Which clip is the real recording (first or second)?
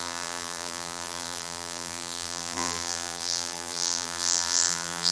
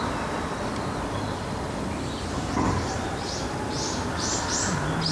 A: second